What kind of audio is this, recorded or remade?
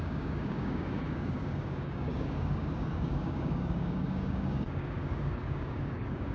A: remade